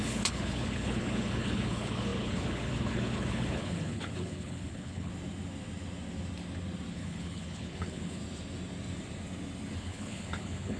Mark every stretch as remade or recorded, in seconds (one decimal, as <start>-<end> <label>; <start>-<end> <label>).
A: 0.0-5.1 remade; 5.1-6.9 recorded; 6.9-8.2 remade; 8.2-9.8 recorded; 9.8-10.8 remade

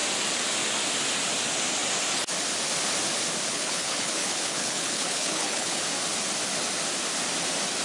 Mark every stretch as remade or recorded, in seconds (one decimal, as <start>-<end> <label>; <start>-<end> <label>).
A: 0.0-3.5 recorded; 3.5-5.8 remade; 5.8-7.8 recorded

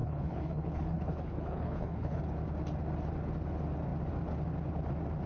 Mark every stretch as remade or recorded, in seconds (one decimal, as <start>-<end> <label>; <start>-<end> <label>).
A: 0.0-2.2 remade; 2.2-5.3 recorded

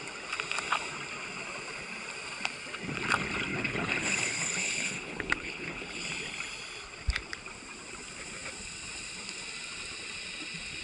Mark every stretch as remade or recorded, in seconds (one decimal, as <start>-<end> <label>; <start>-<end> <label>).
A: 0.0-3.5 recorded; 3.5-6.0 remade; 6.0-10.8 recorded

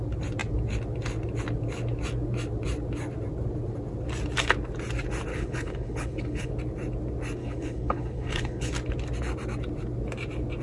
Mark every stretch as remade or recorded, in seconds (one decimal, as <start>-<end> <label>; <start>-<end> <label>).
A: 0.0-5.3 recorded; 5.3-6.5 remade; 6.5-7.4 recorded; 7.4-8.7 remade; 8.7-10.6 recorded

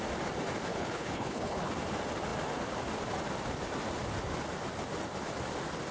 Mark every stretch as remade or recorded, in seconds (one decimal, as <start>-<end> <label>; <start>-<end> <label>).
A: 0.0-0.7 recorded; 0.7-1.7 remade; 1.7-5.9 recorded

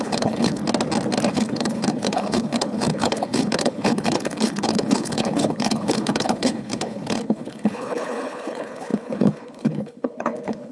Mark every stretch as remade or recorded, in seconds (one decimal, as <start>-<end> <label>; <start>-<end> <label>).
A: 0.0-0.6 remade; 0.6-1.3 recorded; 1.3-10.7 remade